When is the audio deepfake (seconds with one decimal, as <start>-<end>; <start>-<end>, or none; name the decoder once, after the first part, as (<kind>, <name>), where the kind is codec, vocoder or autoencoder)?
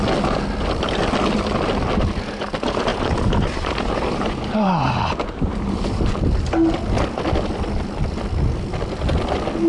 2.9-6.1 (vocoder, BigVGAN v2)